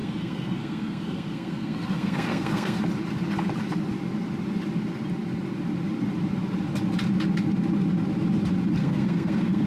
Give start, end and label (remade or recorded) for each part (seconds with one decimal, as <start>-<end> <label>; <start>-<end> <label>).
0.0-2.8 remade; 2.8-8.8 recorded; 8.8-9.7 remade